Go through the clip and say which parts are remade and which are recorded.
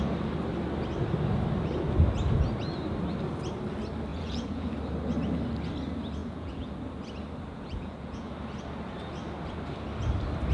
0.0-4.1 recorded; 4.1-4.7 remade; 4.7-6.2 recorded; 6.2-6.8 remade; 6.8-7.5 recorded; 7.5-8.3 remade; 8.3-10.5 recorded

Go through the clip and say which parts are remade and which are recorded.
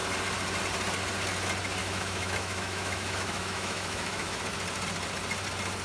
0.0-1.8 recorded; 1.8-4.4 remade; 4.4-5.8 recorded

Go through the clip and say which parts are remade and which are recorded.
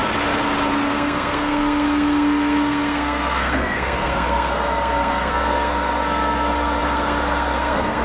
0.0-0.9 recorded; 0.9-8.0 remade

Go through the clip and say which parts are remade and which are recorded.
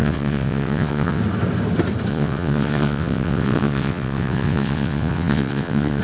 0.0-1.2 remade; 1.2-2.1 recorded; 2.1-6.0 remade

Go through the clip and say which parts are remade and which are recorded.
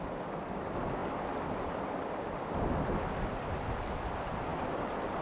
0.0-5.2 remade